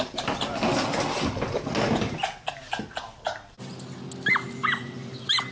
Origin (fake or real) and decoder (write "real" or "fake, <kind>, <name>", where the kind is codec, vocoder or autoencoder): real